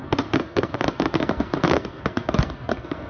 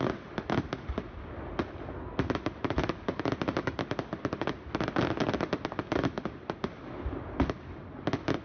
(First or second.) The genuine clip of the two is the second